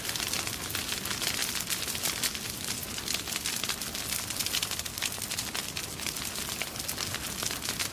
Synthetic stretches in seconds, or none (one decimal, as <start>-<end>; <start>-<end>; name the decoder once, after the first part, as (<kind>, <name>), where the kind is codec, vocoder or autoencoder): none